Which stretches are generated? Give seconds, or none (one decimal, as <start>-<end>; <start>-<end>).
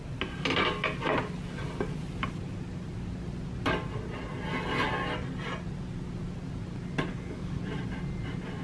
7.1-7.6